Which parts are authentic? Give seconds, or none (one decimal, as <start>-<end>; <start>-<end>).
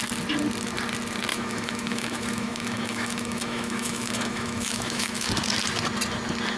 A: 0.0-1.3; 5.3-6.6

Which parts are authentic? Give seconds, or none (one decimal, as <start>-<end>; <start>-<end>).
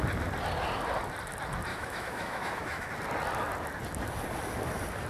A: 0.0-1.7; 2.9-5.1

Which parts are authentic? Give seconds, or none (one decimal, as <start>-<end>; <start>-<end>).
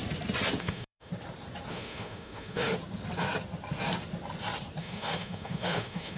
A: 0.0-0.6; 1.1-1.7; 2.7-4.8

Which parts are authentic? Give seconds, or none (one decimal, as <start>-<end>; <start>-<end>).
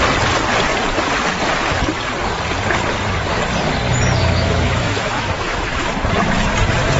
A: 0.0-4.2; 5.9-7.0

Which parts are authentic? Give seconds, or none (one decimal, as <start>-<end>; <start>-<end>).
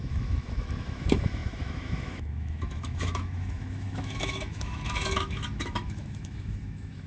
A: none